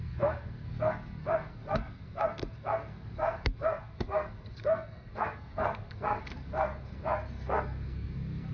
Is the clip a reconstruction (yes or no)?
yes